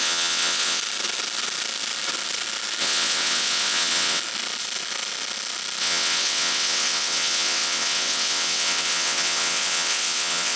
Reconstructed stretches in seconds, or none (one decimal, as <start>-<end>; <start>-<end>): 0.0-0.8; 2.8-4.2; 5.8-10.6